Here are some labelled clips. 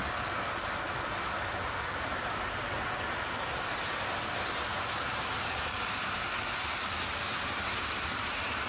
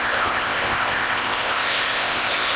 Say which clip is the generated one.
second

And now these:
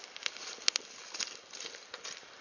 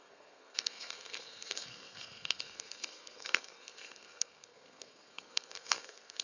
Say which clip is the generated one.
second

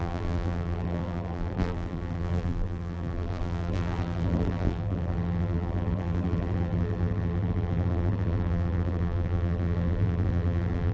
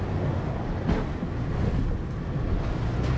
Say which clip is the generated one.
first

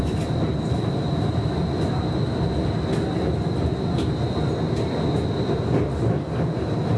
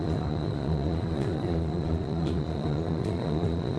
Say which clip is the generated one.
second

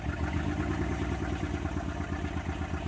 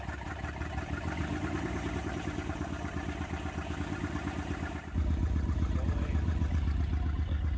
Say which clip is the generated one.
second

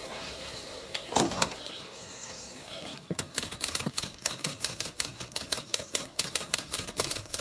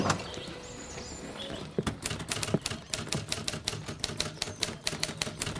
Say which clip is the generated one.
first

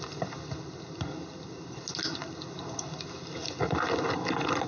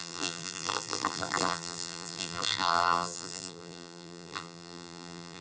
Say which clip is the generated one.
second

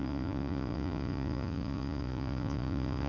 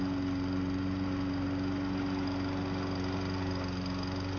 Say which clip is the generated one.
first